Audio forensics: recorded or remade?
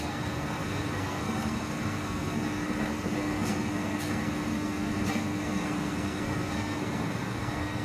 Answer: remade